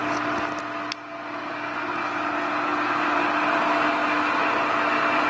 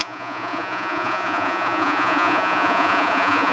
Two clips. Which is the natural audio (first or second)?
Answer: first